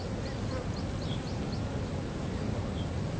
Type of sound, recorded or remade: recorded